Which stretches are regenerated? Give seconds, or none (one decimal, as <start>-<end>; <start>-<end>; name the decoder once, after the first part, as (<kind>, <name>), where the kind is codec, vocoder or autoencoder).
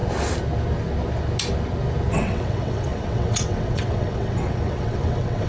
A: 2.1-5.5 (vocoder, WaveNeXt)